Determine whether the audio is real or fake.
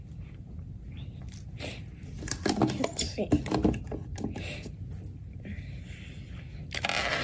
real